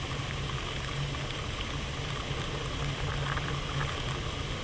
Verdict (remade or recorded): recorded